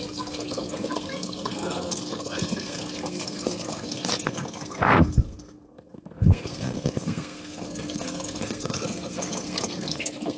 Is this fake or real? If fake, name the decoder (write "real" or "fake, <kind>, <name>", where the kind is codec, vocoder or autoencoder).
fake, codec, SNAC